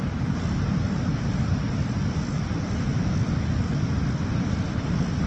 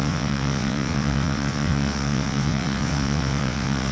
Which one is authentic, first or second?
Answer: first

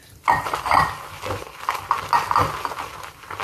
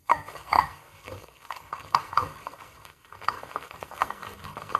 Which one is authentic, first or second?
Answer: first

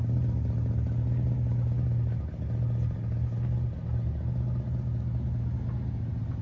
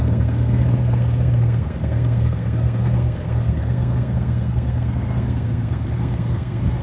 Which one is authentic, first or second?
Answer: first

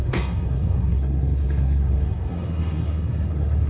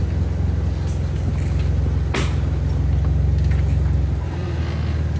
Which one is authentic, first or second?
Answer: second